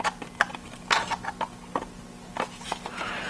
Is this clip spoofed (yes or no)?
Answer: no